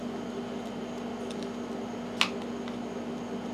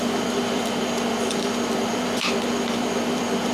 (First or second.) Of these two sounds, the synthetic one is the second